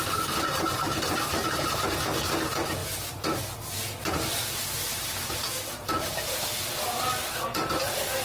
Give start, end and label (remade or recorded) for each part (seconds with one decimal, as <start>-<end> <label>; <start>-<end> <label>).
0.0-4.9 recorded; 4.9-5.5 remade; 5.5-8.2 recorded